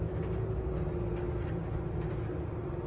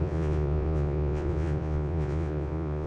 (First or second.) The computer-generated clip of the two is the second